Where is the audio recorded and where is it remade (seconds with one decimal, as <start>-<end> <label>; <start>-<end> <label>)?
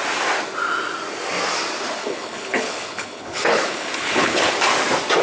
0.0-2.0 recorded; 2.0-4.5 remade; 4.5-5.2 recorded